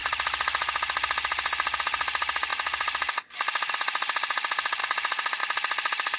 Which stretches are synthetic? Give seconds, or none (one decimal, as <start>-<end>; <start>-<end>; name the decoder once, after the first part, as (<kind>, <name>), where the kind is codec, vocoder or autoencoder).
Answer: none